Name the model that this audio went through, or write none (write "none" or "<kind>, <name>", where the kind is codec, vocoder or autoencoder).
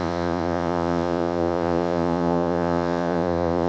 vocoder, Vocos